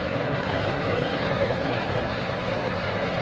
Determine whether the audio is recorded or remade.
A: remade